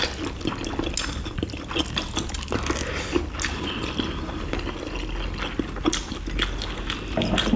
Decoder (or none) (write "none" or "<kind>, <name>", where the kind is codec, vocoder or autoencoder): none